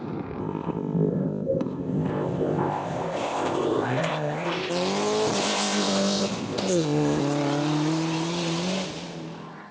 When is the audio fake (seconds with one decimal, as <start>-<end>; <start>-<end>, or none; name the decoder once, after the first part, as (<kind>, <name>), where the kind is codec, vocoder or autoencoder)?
0.4-4.7 (codec, ZipCodec); 5.4-7.2